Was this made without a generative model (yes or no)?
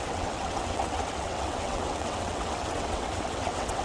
no